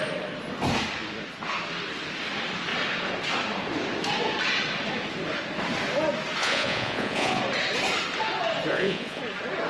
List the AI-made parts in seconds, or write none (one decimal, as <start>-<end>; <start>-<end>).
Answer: 6.4-7.4; 8.7-9.2